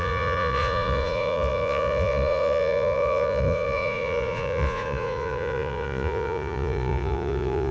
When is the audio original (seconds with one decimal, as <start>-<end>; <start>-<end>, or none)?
none